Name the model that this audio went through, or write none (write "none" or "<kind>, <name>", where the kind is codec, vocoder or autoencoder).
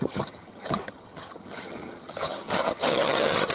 vocoder, HiFi-GAN